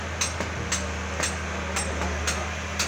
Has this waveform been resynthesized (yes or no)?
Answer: no